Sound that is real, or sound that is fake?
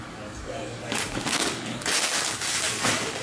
fake